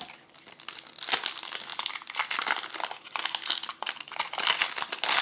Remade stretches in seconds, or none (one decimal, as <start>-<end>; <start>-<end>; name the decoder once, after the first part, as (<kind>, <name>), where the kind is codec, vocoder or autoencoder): 3.7-5.2 (vocoder, BigVGAN v2)